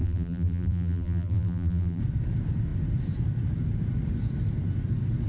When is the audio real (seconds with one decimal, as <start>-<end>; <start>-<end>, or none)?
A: 2.0-5.3